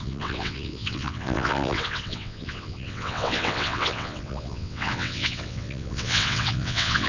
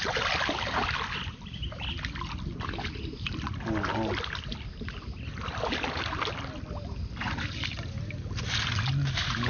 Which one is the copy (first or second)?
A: first